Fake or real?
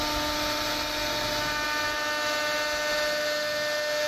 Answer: real